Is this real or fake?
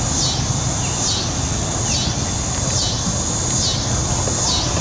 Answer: real